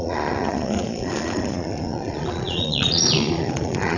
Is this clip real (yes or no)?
no